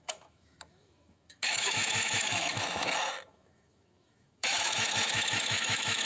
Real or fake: fake